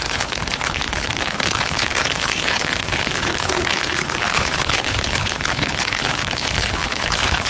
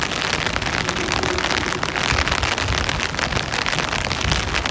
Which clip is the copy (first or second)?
first